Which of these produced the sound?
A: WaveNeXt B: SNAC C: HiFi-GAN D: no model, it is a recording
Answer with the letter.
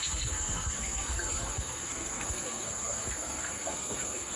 B